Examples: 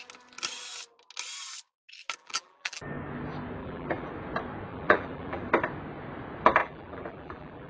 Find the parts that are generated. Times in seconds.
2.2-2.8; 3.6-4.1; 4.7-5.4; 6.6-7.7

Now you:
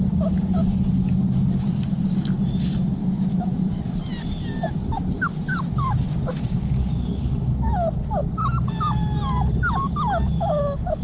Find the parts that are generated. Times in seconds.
3.0-3.9

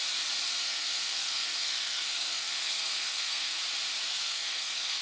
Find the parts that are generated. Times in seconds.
0.6-3.6; 4.1-5.0

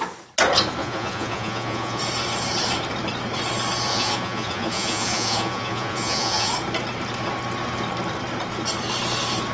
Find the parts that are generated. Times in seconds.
0.8-2.0; 3.9-6.5

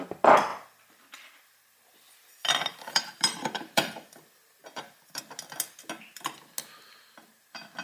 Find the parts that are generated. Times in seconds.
0.5-5.2